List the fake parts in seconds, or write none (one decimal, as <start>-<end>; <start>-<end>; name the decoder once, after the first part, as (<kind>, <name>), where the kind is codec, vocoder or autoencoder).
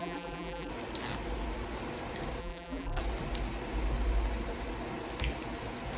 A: 0.0-0.7 (vocoder, BigVGAN v2); 2.4-3.0